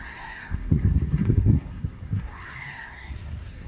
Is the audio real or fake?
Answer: fake